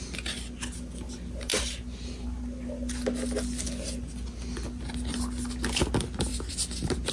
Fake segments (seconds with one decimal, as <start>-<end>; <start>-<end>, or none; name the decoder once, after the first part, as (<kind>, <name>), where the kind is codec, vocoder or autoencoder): none